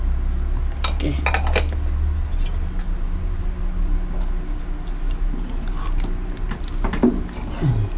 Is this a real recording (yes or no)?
yes